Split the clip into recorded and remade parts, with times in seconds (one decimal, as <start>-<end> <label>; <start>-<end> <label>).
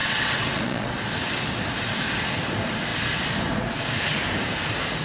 0.0-0.9 remade; 0.9-5.0 recorded